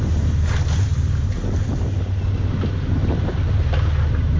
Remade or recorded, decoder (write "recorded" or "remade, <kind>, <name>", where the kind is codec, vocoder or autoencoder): recorded